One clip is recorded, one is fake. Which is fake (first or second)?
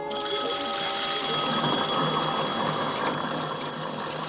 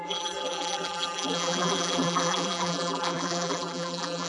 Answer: second